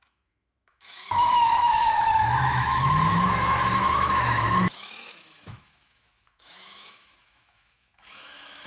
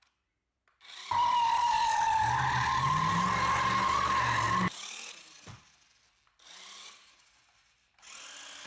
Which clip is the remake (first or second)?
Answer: first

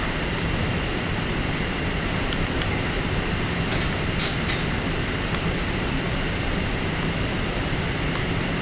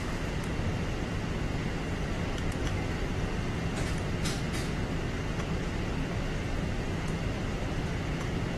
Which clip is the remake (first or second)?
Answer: first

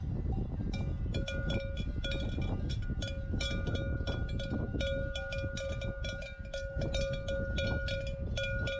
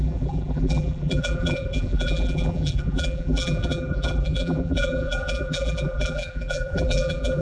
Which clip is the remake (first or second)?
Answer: second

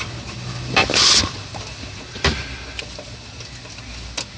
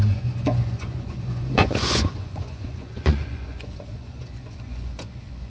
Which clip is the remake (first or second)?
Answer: second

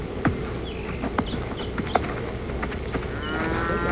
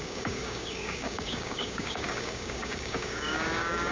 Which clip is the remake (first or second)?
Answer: second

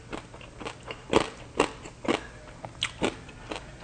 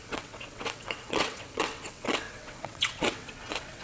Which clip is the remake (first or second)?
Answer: second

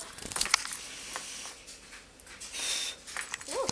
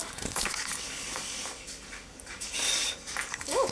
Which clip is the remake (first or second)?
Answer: second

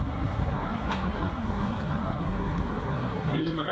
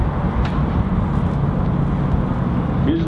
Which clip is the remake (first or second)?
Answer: first